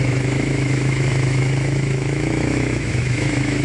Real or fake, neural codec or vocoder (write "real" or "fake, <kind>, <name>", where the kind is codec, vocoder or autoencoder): fake, autoencoder, DAC-VAE